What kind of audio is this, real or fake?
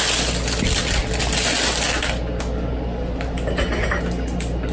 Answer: real